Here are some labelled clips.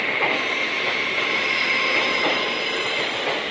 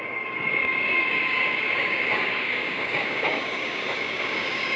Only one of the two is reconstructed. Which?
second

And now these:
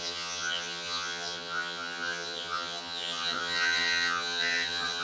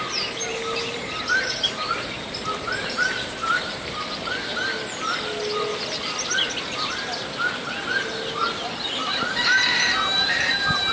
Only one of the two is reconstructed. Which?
first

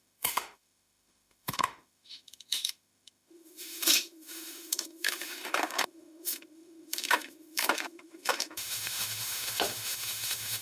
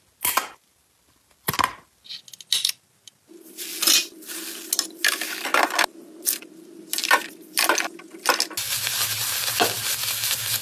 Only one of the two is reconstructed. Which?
first